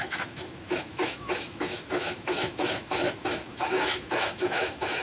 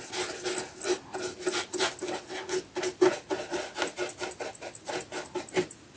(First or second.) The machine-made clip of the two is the first